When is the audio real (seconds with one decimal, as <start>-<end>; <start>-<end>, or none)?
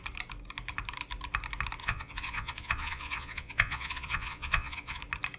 0.0-1.8; 5.0-5.4